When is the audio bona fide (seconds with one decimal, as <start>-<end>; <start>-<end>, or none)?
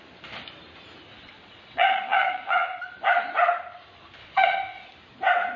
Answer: 0.0-1.1; 2.8-4.2; 4.9-5.6